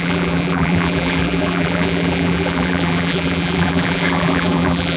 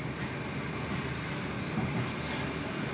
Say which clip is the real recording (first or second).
second